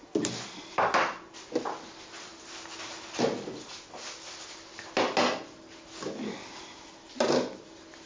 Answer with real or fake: real